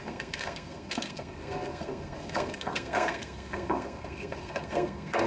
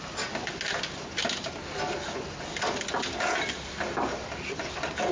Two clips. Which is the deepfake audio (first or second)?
first